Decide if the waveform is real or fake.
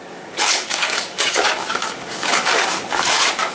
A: fake